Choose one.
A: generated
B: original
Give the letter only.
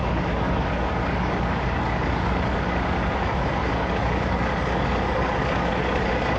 A